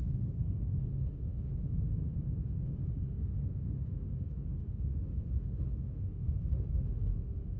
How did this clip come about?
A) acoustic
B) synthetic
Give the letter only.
B